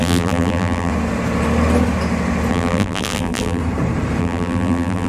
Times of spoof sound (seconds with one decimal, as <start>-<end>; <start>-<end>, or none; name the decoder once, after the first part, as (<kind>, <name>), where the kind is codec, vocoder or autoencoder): 0.0-0.9 (vocoder, BigVGAN v2); 2.5-3.6; 4.2-5.1